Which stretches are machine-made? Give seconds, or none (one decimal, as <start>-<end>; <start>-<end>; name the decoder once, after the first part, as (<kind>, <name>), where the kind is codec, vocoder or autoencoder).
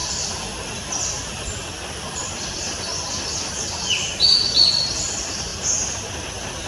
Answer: 0.0-6.7 (vocoder, BigVGAN v2)